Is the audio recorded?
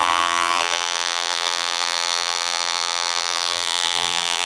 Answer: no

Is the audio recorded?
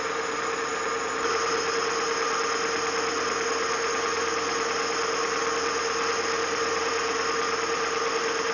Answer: yes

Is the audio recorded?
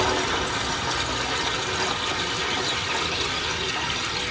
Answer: yes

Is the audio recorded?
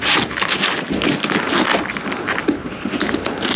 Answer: yes